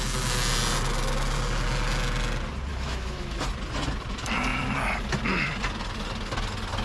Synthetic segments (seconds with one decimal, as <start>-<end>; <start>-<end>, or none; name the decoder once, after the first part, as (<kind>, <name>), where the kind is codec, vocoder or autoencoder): 2.7-3.4 (autoencoder, DAC-VAE)